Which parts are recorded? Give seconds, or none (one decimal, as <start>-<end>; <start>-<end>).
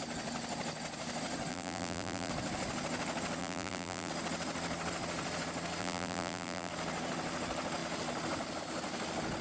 0.0-1.5; 2.3-3.4; 4.1-5.8; 6.7-9.4